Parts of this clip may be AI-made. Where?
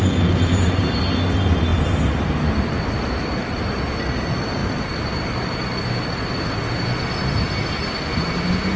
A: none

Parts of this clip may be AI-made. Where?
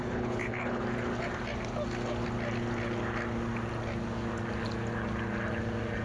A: 0.0-0.8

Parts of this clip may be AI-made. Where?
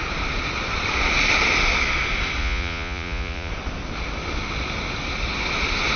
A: 2.4-3.5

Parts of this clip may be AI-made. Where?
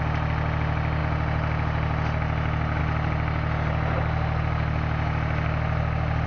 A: none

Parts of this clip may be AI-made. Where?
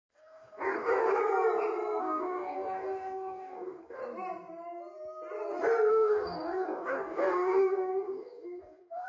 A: 0.0-1.2; 2.0-4.0; 5.9-9.1